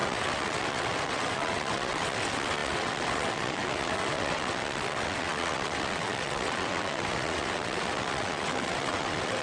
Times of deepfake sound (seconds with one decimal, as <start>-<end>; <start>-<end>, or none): 0.0-9.4

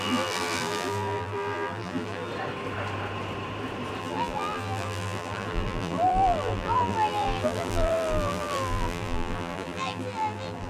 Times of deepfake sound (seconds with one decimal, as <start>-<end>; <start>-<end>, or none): 0.0-2.3; 4.0-10.7

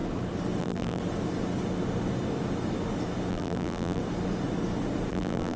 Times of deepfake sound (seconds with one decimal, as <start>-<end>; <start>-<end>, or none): 0.6-1.0; 3.3-4.0; 5.1-5.6

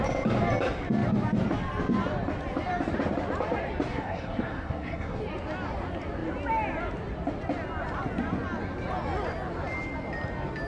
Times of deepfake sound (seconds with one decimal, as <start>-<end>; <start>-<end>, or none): 3.9-5.2

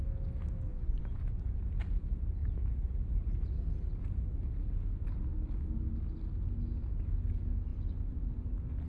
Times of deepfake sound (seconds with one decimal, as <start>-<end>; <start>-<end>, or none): 0.7-1.4

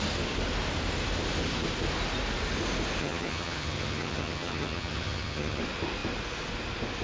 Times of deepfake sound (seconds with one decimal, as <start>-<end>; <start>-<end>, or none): 3.0-5.6